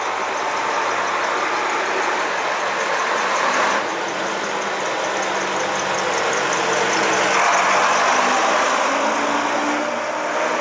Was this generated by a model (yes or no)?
no